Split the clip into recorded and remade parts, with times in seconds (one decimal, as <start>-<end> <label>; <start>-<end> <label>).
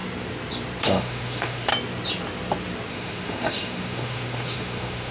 0.0-0.8 recorded; 0.8-1.7 remade; 1.7-2.9 recorded; 2.9-5.1 remade